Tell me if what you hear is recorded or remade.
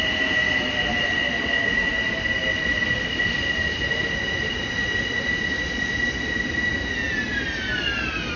recorded